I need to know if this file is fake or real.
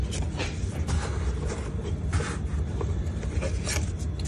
real